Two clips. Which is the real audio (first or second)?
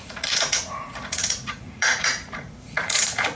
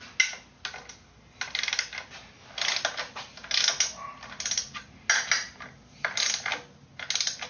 second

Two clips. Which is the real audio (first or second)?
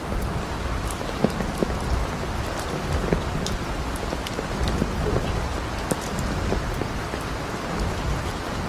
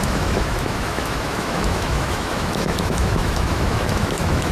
first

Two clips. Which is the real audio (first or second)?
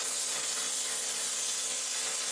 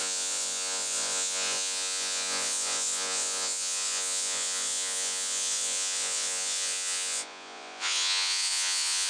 first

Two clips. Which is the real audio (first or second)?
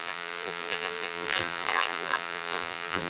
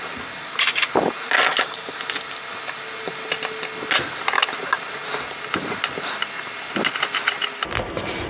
second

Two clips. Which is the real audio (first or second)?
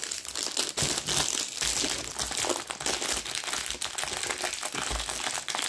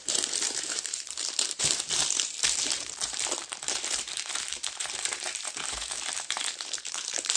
first